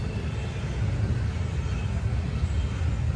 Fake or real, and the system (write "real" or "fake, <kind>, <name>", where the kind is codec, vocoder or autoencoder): real